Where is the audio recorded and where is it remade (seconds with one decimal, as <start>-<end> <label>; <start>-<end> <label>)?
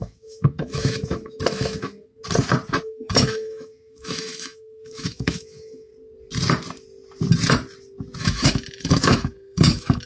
0.0-2.1 remade; 2.1-2.8 recorded; 2.8-5.9 remade; 5.9-8.2 recorded; 8.2-10.1 remade